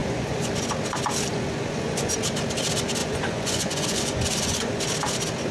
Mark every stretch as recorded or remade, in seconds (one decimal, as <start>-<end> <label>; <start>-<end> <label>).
0.0-0.5 remade; 0.5-1.3 recorded; 1.3-2.1 remade; 2.1-3.0 recorded; 3.0-4.8 remade; 4.8-5.5 recorded

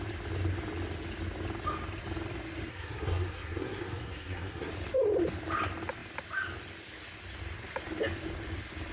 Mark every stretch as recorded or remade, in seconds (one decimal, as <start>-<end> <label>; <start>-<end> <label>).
0.0-2.7 recorded; 2.7-4.7 remade; 4.7-8.9 recorded

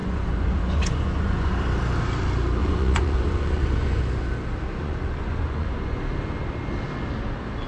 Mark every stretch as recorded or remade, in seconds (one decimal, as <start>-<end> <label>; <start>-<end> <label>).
0.0-1.5 remade; 1.5-2.6 recorded; 2.6-4.0 remade; 4.0-4.8 recorded; 4.8-6.0 remade; 6.0-7.7 recorded

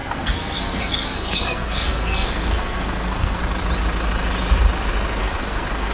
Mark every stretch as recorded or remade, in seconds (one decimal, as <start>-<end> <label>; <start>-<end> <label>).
0.0-3.4 remade; 3.4-5.2 recorded; 5.2-5.9 remade